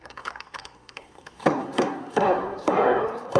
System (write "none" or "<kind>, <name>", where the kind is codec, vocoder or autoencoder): codec, SNAC